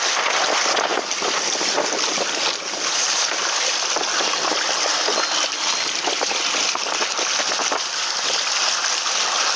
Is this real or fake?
real